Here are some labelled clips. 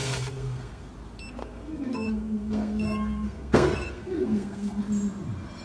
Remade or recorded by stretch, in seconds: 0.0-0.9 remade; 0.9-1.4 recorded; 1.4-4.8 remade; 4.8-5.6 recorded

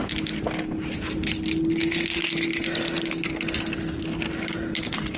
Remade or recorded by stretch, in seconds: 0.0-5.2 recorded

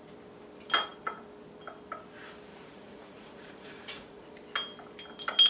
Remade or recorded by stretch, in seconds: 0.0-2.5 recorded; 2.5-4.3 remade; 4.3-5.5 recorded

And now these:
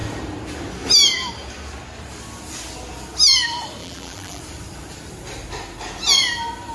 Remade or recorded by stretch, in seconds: 0.0-3.8 recorded; 3.8-4.4 remade; 4.4-6.7 recorded

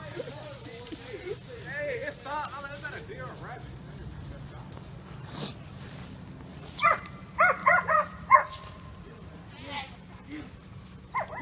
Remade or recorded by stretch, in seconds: 0.0-6.5 recorded; 6.5-7.0 remade; 7.0-7.6 recorded; 7.6-9.5 remade; 9.5-11.4 recorded

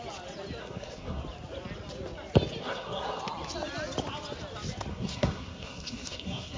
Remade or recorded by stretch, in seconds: 0.0-0.6 recorded; 0.6-1.2 remade; 1.2-2.6 recorded; 2.6-3.2 remade; 3.2-4.9 recorded; 4.9-6.6 remade

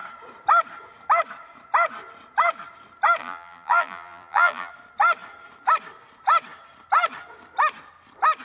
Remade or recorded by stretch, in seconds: 0.0-3.2 recorded; 3.2-4.7 remade; 4.7-8.4 recorded